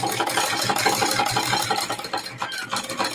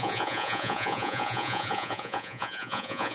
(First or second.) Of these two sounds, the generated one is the second